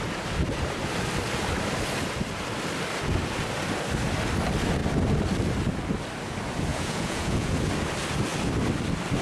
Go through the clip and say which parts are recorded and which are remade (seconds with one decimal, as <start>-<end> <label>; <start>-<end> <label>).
0.0-6.7 recorded; 6.7-7.5 remade; 7.5-9.2 recorded